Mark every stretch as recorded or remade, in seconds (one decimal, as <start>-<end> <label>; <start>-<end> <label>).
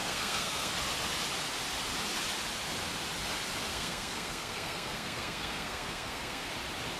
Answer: 0.0-0.7 remade; 0.7-3.7 recorded; 3.7-6.5 remade; 6.5-7.0 recorded